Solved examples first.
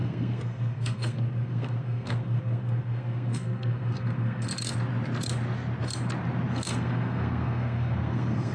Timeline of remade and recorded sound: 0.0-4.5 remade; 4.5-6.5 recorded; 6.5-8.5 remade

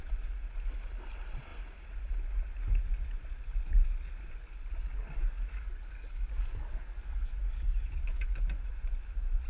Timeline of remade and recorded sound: 0.0-4.9 recorded; 4.9-8.6 remade; 8.6-9.5 recorded

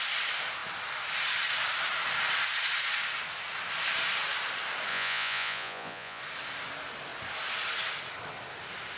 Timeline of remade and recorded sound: 0.0-4.9 recorded; 4.9-6.2 remade; 6.2-9.0 recorded

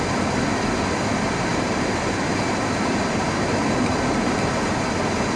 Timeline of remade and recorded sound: 0.0-1.5 recorded; 1.5-4.7 remade; 4.7-5.4 recorded

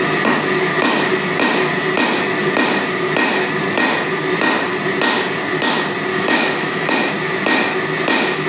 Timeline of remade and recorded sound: 0.0-6.1 recorded; 6.1-6.9 remade; 6.9-8.5 recorded

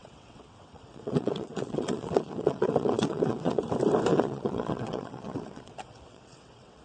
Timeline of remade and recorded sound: 0.0-3.6 remade; 3.6-4.1 recorded; 4.1-6.8 remade

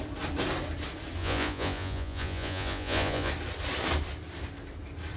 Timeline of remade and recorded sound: 0.0-1.2 recorded; 1.2-3.3 remade; 3.3-5.2 recorded

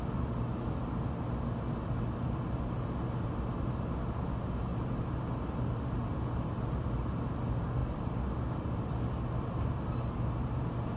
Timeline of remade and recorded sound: 0.0-11.0 recorded